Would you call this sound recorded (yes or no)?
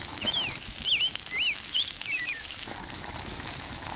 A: no